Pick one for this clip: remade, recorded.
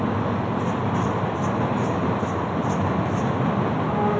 recorded